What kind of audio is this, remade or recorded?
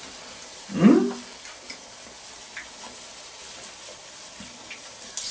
recorded